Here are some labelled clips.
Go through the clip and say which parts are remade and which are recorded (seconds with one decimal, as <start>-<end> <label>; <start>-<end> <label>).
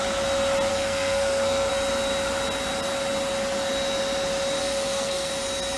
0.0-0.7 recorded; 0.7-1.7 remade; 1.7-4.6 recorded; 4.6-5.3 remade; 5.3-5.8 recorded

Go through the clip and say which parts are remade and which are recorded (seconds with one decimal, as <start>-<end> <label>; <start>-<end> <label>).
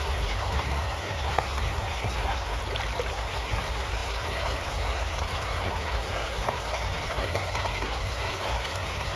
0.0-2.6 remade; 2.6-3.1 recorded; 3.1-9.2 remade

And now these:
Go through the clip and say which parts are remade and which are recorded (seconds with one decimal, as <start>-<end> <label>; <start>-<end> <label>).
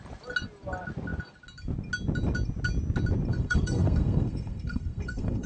0.0-3.3 recorded; 3.3-5.5 remade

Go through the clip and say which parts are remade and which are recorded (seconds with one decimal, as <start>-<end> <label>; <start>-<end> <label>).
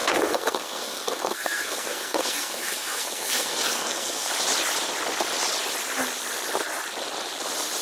0.0-4.3 remade; 4.3-7.8 recorded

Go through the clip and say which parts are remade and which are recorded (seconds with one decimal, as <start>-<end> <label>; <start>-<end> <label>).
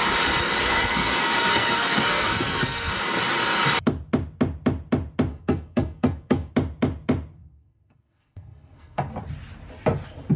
0.0-0.6 recorded; 0.6-2.9 remade; 2.9-5.3 recorded; 5.3-6.5 remade; 6.5-7.4 recorded; 7.4-9.1 remade; 9.1-10.4 recorded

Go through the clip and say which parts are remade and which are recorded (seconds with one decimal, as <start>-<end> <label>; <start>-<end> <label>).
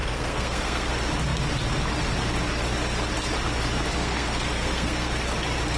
0.0-0.9 remade; 0.9-4.0 recorded; 4.0-5.1 remade; 5.1-5.8 recorded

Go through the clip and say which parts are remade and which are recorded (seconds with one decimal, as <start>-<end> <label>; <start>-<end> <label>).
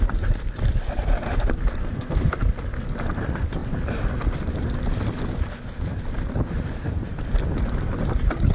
0.0-1.8 recorded; 1.8-2.4 remade; 2.4-8.5 recorded